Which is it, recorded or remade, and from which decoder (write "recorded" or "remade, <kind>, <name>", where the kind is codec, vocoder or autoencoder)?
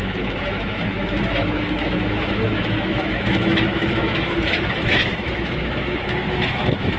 remade, autoencoder, DAC-VAE